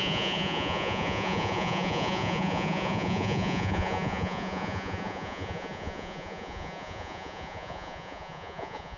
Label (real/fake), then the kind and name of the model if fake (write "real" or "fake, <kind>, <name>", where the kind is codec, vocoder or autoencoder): fake, vocoder, Vocos